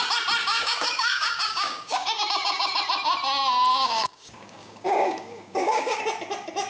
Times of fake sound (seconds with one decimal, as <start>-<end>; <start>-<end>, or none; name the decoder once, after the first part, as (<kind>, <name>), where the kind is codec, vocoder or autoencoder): 0.4-2.8 (codec, DAC); 3.7-6.0